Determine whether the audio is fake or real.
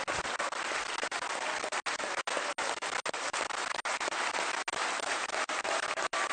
real